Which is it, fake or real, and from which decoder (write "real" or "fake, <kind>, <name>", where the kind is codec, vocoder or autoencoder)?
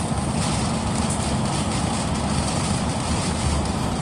real